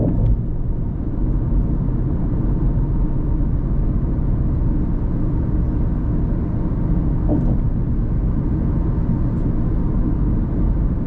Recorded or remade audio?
recorded